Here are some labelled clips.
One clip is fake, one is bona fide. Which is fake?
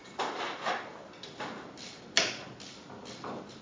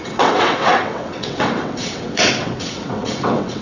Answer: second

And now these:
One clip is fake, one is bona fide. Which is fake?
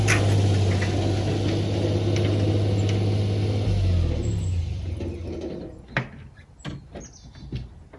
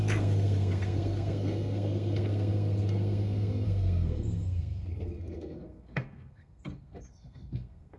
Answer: second